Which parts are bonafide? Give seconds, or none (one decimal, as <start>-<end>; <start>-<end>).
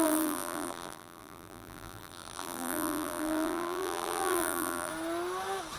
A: 4.9-5.8